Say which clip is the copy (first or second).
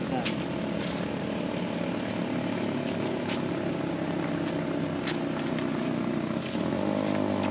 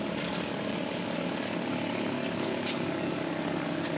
second